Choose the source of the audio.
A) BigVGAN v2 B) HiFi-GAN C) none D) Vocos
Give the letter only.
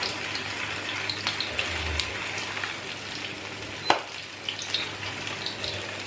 C